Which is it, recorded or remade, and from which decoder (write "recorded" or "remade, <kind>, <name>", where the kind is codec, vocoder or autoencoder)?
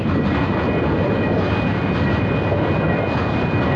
recorded